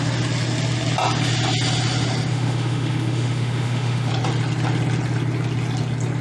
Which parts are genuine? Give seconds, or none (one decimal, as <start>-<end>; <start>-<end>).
0.0-2.3; 4.1-6.2

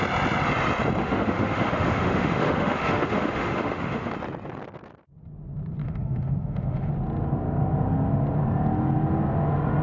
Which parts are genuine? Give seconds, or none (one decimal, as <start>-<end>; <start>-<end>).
0.0-1.0; 4.1-5.8; 6.9-9.8

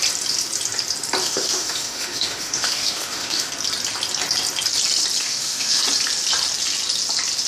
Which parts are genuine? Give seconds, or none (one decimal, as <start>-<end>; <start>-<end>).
0.0-1.2; 3.5-5.2; 5.8-7.5

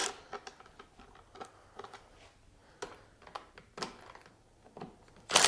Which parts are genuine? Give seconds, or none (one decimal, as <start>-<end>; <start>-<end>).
0.0-5.5

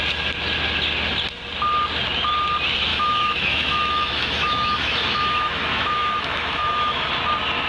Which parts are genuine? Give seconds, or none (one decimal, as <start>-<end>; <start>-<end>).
0.0-2.9; 7.1-7.7

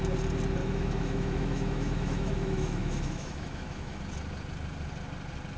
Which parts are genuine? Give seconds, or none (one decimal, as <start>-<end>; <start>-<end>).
0.0-0.6; 4.0-5.6

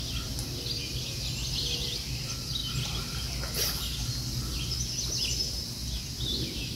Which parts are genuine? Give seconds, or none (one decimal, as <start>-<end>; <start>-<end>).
0.0-6.8